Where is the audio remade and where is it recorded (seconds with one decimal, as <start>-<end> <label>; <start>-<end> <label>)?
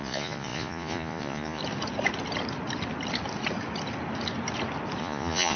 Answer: 0.0-1.6 remade; 1.6-5.0 recorded; 5.0-5.6 remade